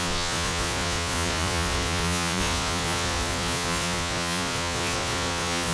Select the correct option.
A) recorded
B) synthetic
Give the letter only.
B